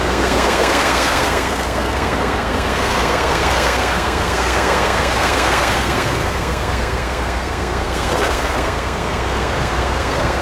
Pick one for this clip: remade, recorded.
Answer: remade